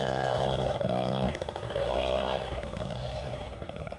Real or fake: fake